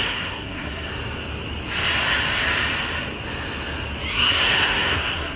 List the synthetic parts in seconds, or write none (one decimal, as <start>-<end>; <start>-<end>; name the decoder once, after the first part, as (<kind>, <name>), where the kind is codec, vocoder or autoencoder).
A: 0.0-0.9 (codec, SNAC); 4.1-5.4